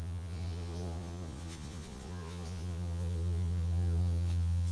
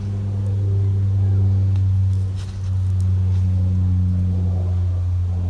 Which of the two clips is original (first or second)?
second